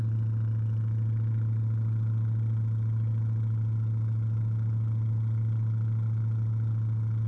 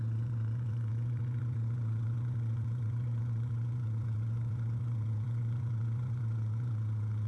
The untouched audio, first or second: first